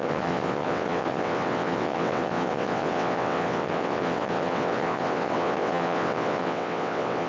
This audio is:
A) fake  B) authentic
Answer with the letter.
A